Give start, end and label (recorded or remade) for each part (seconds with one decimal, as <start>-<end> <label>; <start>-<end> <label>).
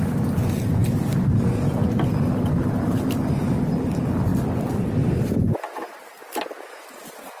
0.0-7.4 recorded